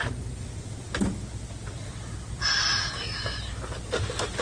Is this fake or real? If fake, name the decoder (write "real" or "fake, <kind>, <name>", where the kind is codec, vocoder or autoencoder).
real